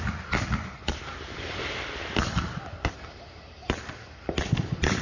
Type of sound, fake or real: real